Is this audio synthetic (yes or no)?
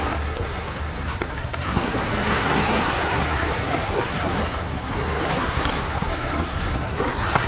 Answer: yes